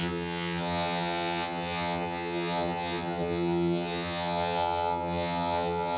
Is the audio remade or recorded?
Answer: remade